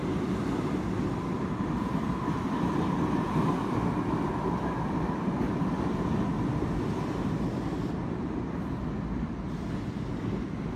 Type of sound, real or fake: fake